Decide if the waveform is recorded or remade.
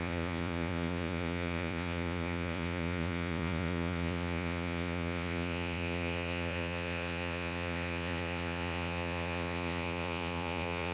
remade